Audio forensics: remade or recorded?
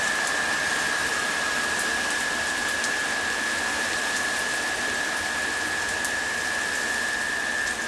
remade